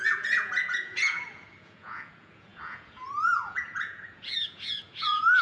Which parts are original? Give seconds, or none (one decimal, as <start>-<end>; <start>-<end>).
none